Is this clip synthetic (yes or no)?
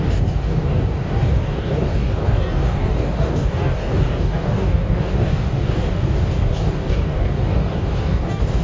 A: yes